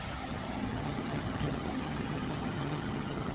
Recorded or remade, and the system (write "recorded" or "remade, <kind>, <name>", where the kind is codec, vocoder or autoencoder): remade, vocoder, HiFi-GAN